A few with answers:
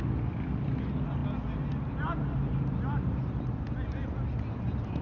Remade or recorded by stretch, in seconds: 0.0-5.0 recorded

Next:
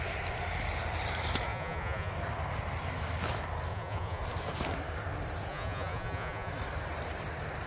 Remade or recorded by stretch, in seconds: 0.0-1.5 recorded; 1.5-2.1 remade; 2.1-3.7 recorded; 3.7-4.2 remade; 4.2-5.5 recorded; 5.5-6.5 remade; 6.5-7.7 recorded

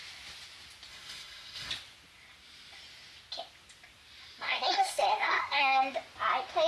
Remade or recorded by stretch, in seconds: 0.0-0.9 recorded; 0.9-1.7 remade; 1.7-4.4 recorded; 4.4-5.8 remade; 5.8-6.7 recorded

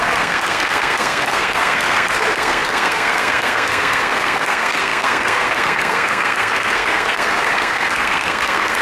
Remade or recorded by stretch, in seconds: 0.0-8.8 remade